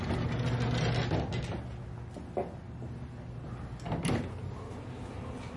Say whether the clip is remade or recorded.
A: recorded